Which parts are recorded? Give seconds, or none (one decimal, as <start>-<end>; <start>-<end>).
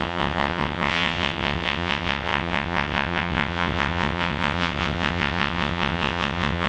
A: none